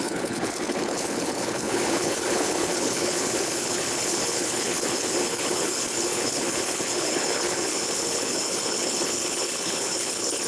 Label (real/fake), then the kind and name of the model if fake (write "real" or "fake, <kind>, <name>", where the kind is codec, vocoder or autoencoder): fake, codec, HILCodec